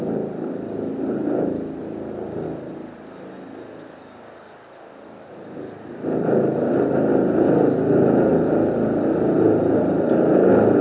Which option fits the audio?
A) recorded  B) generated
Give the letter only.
A